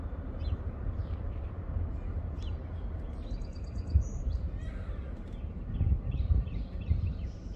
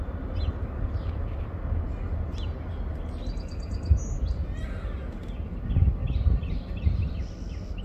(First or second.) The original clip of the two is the second